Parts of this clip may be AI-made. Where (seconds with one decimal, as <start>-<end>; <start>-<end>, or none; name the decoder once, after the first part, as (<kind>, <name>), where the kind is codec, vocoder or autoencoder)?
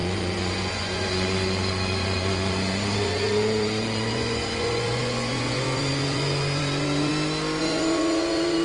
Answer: 0.0-7.1 (vocoder, Vocos); 7.6-8.6